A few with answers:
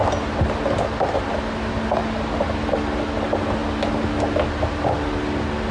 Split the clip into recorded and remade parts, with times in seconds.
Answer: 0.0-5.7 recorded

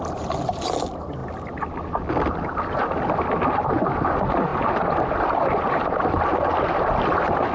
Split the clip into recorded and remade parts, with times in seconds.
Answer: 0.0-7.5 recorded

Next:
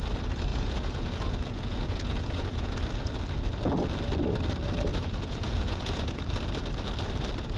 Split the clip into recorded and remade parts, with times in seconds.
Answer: 0.0-0.5 recorded; 0.5-2.8 remade; 2.8-4.9 recorded; 4.9-6.2 remade; 6.2-7.6 recorded

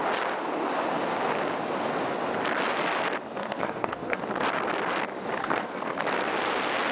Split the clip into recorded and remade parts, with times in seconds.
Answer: 0.0-3.4 recorded; 3.4-4.2 remade; 4.2-5.4 recorded; 5.4-6.0 remade; 6.0-6.9 recorded

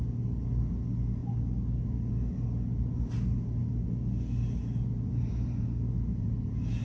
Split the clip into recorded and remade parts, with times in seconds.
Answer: 0.0-6.1 recorded; 6.1-6.8 remade